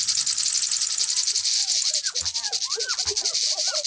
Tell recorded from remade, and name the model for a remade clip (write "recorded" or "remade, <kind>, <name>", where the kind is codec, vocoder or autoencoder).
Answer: recorded